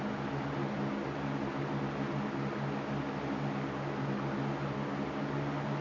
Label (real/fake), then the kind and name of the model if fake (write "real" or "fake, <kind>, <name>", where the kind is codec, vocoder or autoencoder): real